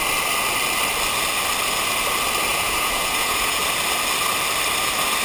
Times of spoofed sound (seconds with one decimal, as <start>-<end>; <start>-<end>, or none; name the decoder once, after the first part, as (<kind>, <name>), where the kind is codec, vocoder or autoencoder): 2.5-3.6 (vocoder, Vocos)